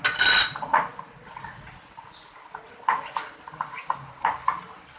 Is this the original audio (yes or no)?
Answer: yes